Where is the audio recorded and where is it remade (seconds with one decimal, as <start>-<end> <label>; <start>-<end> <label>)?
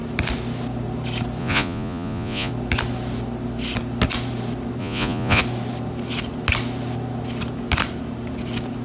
0.0-1.4 recorded; 1.4-2.5 remade; 2.5-4.8 recorded; 4.8-5.4 remade; 5.4-8.8 recorded